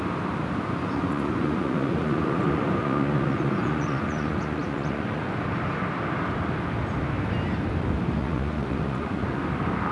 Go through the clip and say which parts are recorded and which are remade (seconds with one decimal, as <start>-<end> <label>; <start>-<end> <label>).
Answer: 0.0-0.9 recorded; 0.9-5.4 remade; 5.4-8.2 recorded; 8.2-9.4 remade; 9.4-9.9 recorded